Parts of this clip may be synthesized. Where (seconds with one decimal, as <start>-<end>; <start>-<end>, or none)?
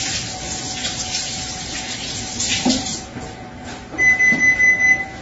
none